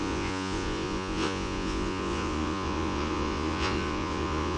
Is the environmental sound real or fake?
fake